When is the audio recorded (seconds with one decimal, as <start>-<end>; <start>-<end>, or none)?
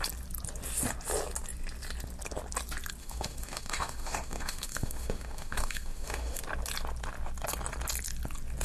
0.0-3.0; 6.4-8.6